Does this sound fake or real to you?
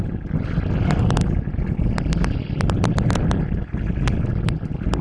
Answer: real